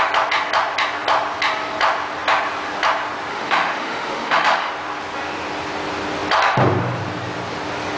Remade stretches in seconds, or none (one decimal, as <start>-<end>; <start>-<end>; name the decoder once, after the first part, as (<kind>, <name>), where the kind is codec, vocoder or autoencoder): 3.3-4.7 (autoencoder, DAC-VAE)